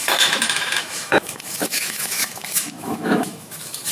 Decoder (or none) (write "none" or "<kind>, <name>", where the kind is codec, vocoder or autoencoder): autoencoder, DAC-VAE